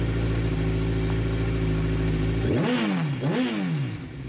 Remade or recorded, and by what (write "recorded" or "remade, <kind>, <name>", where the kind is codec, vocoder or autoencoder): recorded